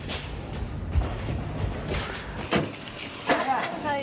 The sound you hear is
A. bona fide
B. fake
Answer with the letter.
A